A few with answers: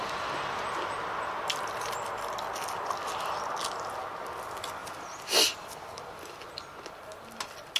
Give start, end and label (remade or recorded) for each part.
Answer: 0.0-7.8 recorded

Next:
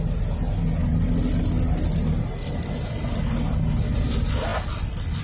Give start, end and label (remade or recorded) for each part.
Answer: 0.0-5.2 recorded